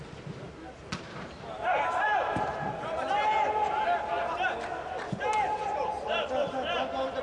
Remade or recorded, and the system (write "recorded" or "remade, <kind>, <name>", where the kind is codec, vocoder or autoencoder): recorded